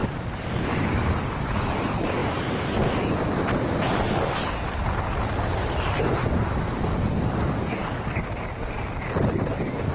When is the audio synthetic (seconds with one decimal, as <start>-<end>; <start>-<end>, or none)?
0.0-1.1; 7.8-8.8